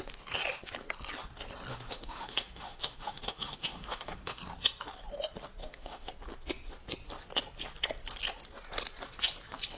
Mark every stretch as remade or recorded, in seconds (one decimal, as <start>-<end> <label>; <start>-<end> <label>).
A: 0.0-1.7 recorded; 1.7-4.4 remade; 4.4-5.6 recorded; 5.6-6.1 remade; 6.1-9.8 recorded